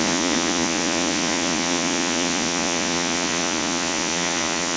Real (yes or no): no